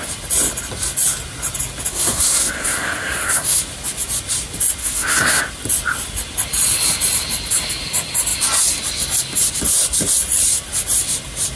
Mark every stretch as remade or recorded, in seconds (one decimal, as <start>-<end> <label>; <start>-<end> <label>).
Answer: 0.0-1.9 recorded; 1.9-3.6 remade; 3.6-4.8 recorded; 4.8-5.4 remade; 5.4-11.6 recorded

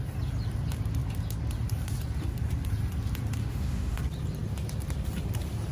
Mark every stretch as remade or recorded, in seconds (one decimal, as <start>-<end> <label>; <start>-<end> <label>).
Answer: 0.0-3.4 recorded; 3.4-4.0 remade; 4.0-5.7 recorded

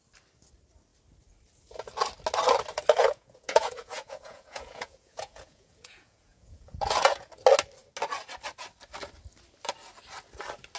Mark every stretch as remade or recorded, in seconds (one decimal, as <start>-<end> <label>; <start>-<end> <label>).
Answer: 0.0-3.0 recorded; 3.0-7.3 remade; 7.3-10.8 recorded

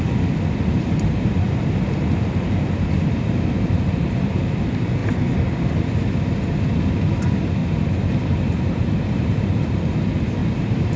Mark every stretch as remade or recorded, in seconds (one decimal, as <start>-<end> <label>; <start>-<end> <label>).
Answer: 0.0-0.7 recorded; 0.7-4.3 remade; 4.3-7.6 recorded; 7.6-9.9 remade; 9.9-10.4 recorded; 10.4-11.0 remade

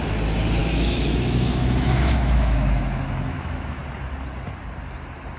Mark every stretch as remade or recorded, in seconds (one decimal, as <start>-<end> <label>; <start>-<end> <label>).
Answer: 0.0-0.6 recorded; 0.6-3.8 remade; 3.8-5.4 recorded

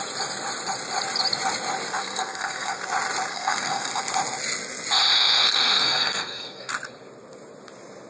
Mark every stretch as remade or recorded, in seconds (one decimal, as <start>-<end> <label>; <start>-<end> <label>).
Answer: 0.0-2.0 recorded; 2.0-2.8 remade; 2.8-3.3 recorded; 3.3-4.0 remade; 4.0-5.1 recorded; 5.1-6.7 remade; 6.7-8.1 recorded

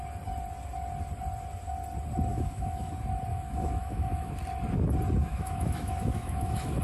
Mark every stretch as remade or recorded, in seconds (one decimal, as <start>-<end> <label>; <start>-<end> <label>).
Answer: 0.0-2.3 recorded; 2.3-2.9 remade; 2.9-3.3 recorded; 3.3-4.3 remade; 4.3-5.2 recorded; 5.2-6.8 remade

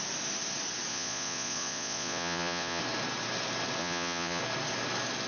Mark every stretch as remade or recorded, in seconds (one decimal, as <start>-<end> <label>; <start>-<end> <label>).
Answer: 0.0-0.9 recorded; 0.9-2.8 remade; 2.8-3.8 recorded; 3.8-4.4 remade; 4.4-5.3 recorded